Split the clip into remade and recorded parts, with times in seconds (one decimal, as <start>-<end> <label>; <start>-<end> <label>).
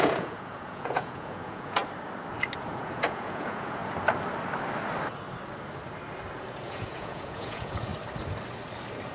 0.0-1.8 remade; 1.8-2.6 recorded; 2.6-3.8 remade; 3.8-6.3 recorded; 6.3-7.9 remade; 7.9-9.1 recorded